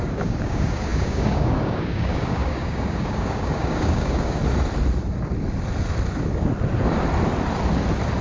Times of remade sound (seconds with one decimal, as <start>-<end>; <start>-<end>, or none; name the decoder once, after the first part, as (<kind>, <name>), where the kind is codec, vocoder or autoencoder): 0.0-4.4 (codec, DAC)